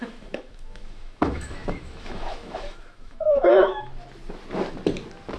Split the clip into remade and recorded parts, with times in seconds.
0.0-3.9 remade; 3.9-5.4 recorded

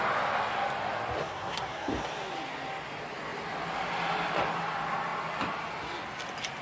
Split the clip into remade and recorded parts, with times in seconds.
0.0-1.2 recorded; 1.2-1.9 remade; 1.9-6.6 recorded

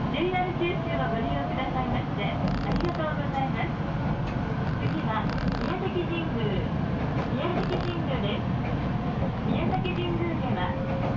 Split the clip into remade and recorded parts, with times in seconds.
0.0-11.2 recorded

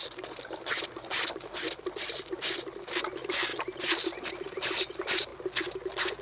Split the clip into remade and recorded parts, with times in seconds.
0.0-3.5 remade; 3.5-4.3 recorded; 4.3-5.3 remade; 5.3-6.2 recorded

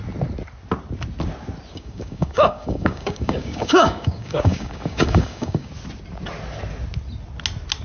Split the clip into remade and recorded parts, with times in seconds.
0.0-1.7 recorded; 1.7-5.7 remade; 5.7-7.8 recorded

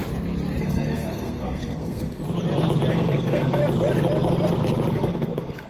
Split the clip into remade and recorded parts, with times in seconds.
0.0-0.6 recorded; 0.6-2.2 remade; 2.2-2.9 recorded; 2.9-3.6 remade; 3.6-4.9 recorded; 4.9-5.7 remade